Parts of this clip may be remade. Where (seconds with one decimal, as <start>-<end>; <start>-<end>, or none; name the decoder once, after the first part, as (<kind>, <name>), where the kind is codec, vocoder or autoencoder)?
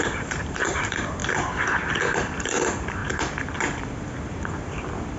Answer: 0.0-1.2 (vocoder, BigVGAN v2); 2.4-3.0